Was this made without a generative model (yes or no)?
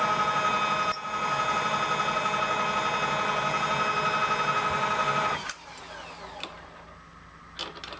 yes